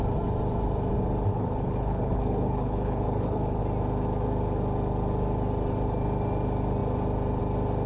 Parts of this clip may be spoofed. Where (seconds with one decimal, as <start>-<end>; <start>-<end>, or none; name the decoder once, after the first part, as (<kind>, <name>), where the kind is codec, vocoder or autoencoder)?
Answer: 1.3-3.6 (codec, HILCodec)